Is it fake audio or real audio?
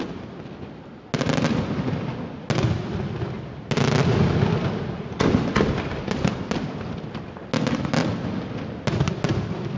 real